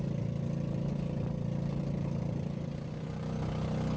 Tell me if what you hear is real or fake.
real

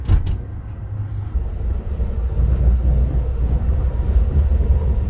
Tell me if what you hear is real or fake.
real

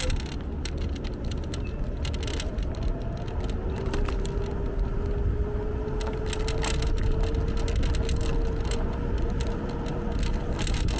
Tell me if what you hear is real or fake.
real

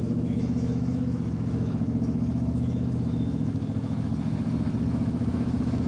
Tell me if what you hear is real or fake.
fake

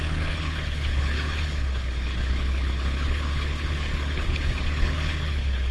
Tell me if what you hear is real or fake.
fake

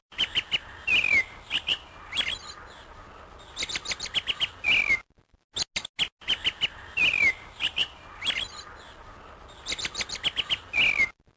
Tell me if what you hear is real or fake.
real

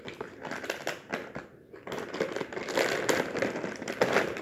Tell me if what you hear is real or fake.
real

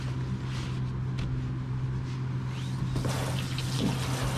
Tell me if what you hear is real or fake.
real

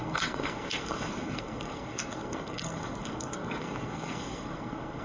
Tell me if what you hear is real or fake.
fake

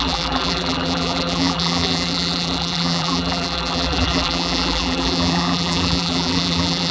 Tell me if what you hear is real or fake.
fake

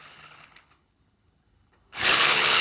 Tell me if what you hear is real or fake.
fake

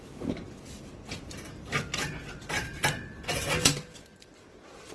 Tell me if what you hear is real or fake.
fake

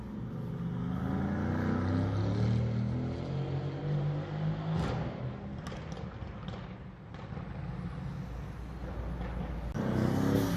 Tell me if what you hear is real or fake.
real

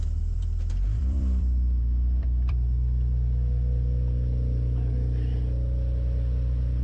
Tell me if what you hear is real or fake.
fake